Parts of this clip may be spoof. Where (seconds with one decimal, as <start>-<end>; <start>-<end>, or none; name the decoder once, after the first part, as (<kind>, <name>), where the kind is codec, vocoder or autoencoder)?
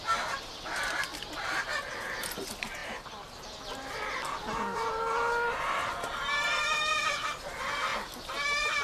none